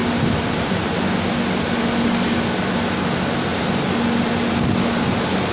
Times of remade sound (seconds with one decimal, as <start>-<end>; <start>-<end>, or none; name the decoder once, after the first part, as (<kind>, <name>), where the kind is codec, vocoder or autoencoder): 0.0-0.9 (vocoder, BigVGAN v2)